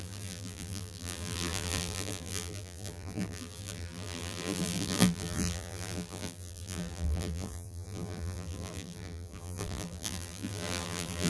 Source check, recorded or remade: remade